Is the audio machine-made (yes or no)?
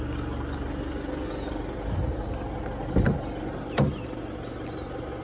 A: no